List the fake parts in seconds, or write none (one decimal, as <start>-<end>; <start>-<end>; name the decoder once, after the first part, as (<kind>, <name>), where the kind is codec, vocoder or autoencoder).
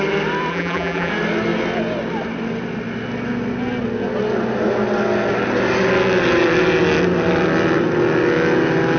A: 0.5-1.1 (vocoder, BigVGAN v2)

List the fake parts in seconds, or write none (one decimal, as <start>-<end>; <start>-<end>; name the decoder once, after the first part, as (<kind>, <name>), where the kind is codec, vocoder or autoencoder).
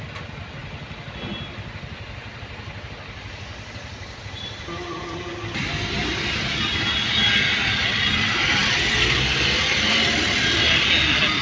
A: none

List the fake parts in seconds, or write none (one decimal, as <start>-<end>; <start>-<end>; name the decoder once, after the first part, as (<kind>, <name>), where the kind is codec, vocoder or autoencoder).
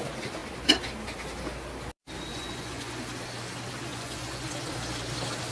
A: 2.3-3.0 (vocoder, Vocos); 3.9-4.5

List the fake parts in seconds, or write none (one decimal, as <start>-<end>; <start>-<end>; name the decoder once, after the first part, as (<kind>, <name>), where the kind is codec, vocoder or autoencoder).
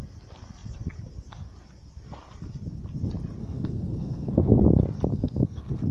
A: 3.4-4.6 (codec, SNAC); 5.1-5.9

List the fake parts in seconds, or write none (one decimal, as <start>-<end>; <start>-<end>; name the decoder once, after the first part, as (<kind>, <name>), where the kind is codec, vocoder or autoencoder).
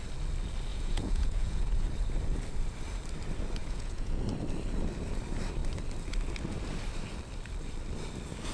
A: 0.7-1.7 (vocoder, Vocos); 3.6-4.2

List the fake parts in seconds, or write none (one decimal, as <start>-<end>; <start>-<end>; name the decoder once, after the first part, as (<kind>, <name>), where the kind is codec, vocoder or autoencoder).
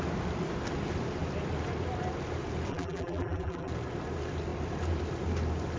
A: 2.7-3.7 (vocoder, BigVGAN v2)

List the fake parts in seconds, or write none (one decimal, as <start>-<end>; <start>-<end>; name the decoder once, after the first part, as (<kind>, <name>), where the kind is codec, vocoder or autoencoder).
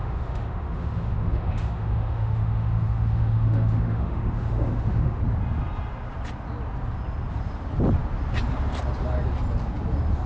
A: 0.0-5.2 (autoencoder, DAC-VAE)